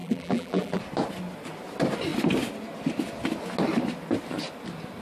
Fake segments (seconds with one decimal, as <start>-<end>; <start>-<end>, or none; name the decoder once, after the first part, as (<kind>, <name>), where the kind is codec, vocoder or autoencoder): 0.0-0.8 (vocoder, BigVGAN v2)